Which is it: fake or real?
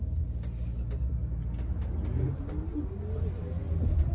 real